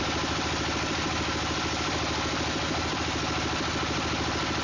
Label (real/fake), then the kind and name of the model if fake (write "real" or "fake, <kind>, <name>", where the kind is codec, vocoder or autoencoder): real